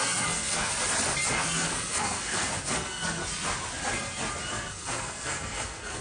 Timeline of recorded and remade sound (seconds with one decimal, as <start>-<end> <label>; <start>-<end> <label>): 0.0-0.7 remade; 0.7-1.3 recorded; 1.3-3.2 remade; 3.2-4.5 recorded; 4.5-6.0 remade